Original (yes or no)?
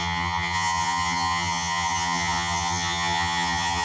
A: no